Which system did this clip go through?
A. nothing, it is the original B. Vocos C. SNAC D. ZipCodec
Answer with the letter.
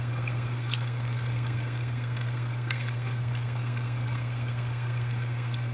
C